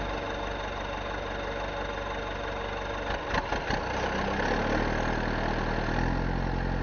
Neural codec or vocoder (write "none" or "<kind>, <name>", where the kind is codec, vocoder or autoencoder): none